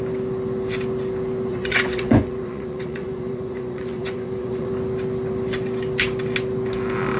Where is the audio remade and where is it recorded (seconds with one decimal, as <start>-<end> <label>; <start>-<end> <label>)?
0.0-1.5 recorded; 1.5-4.7 remade; 4.7-7.2 recorded